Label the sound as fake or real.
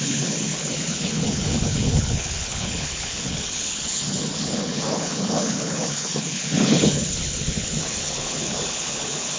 fake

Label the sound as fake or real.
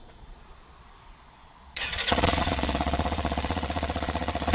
fake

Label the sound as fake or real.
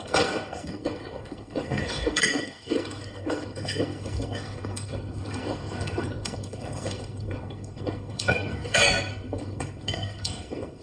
fake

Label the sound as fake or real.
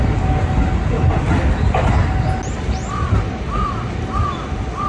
real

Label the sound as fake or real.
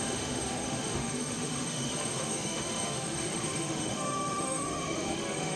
fake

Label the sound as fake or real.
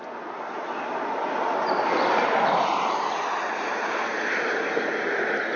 real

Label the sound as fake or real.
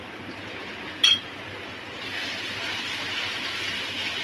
real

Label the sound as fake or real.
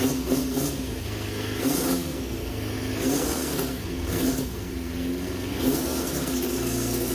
fake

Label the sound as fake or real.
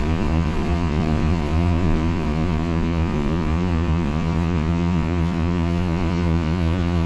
fake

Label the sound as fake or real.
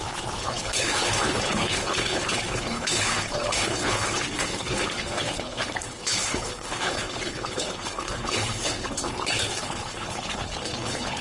fake